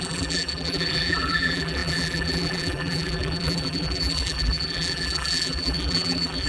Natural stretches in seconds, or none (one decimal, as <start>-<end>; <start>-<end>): none